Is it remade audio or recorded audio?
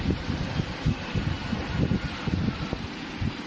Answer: recorded